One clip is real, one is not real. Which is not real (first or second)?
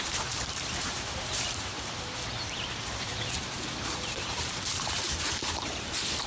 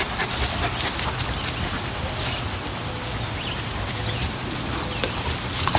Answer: first